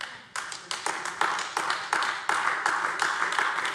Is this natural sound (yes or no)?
yes